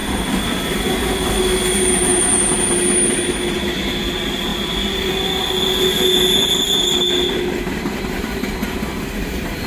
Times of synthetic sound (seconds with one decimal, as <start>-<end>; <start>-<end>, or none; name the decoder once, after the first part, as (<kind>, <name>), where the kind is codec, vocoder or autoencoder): 0.0-1.4 (vocoder, BigVGAN v2); 4.5-5.1